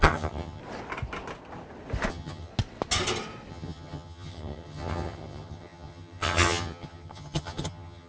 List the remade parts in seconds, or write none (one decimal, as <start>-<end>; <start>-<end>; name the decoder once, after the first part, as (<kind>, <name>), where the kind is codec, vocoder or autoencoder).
0.0-0.6 (vocoder, HiFi-GAN); 2.1-2.5; 3.5-8.1

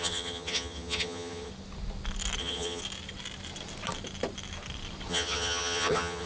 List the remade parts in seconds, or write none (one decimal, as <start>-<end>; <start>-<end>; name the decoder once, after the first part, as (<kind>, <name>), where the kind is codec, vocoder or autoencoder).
0.0-1.5 (vocoder, HiFi-GAN); 2.4-2.8; 5.1-6.3

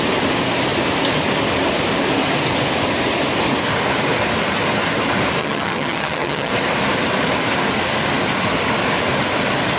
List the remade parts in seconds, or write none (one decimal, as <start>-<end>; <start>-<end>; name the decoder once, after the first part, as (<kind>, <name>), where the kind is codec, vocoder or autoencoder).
5.4-6.5 (vocoder, HiFi-GAN)

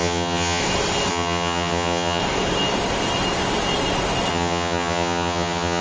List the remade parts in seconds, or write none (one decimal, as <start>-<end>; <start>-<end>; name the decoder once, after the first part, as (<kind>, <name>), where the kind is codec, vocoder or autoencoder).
0.0-0.6 (vocoder, HiFi-GAN); 1.1-2.2; 4.3-5.8

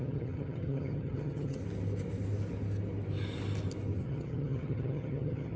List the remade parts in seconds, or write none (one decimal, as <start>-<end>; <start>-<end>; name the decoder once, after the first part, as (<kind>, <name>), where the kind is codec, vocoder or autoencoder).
0.0-1.6 (vocoder, HiFi-GAN); 4.0-5.6